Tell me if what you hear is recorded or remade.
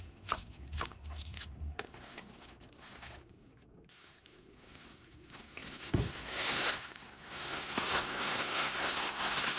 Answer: remade